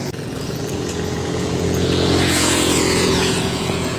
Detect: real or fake fake